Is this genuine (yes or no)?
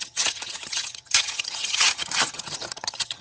no